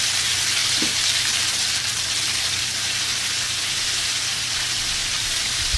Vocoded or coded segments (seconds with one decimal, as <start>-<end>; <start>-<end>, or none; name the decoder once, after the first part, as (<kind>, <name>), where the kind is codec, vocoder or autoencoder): 0.6-2.5 (vocoder, BigVGAN v2); 5.0-5.8